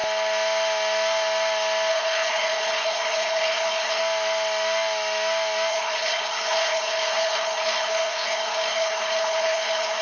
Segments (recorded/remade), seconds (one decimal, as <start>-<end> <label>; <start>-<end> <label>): 0.0-1.9 recorded; 1.9-4.0 remade; 4.0-5.7 recorded; 5.7-10.0 remade